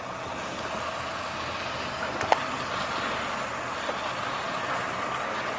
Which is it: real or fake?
real